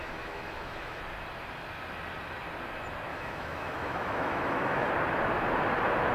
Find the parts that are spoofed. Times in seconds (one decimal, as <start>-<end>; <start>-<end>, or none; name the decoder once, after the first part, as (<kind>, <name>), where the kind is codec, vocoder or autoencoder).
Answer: 0.0-1.0 (autoencoder, DAC-VAE); 3.1-4.9